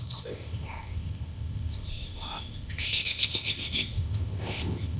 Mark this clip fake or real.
fake